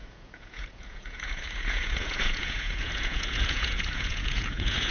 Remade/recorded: remade